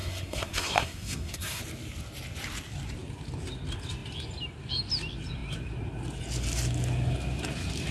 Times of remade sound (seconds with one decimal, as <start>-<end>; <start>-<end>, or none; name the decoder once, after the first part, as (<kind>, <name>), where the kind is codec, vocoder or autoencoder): 0.0-1.6 (codec, SNAC)